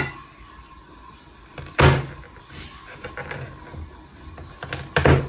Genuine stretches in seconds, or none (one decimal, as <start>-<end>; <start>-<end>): 0.0-5.3